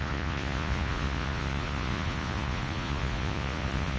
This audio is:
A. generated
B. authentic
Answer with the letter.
A